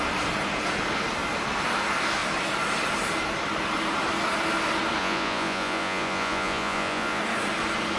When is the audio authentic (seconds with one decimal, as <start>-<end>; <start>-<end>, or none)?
0.0-5.0; 7.2-8.0